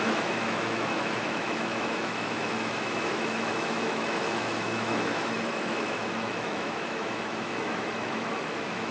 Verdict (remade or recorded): remade